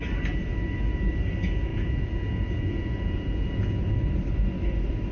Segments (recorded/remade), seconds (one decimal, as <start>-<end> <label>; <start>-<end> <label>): 0.0-1.7 recorded; 1.7-3.9 remade; 3.9-5.1 recorded

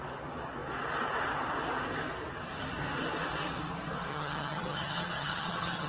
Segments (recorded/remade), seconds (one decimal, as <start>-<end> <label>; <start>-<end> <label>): 0.0-4.1 recorded; 4.1-5.9 remade

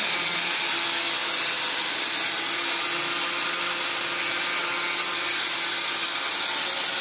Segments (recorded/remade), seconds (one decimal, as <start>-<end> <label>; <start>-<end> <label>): 0.0-7.0 recorded

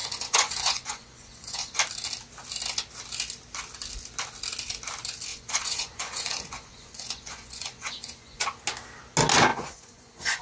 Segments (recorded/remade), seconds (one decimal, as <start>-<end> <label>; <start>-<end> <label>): 0.0-1.8 remade; 1.8-5.3 recorded; 5.3-8.4 remade; 8.4-9.5 recorded; 9.5-10.4 remade

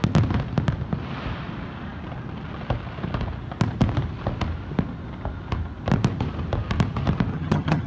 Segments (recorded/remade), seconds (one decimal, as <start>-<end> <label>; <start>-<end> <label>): 0.0-7.3 recorded; 7.3-7.9 remade

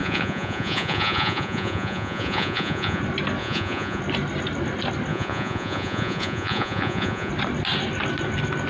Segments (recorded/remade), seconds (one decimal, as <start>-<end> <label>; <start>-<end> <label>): 0.0-3.0 remade; 3.0-3.4 recorded; 3.4-4.0 remade; 4.0-5.1 recorded; 5.1-7.3 remade; 7.3-8.7 recorded

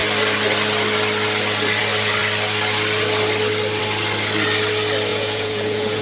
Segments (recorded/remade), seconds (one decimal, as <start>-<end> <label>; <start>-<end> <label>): 0.0-5.1 recorded; 5.1-6.0 remade

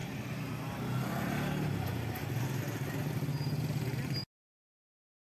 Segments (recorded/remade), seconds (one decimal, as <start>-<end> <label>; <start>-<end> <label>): 0.0-5.2 recorded